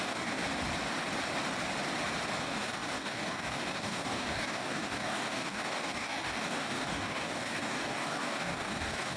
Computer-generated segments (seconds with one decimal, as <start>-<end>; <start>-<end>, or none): 0.0-0.4; 2.4-9.2